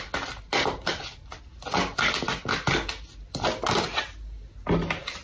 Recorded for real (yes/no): yes